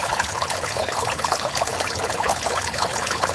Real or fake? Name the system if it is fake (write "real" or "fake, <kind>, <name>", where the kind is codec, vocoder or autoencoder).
fake, codec, HILCodec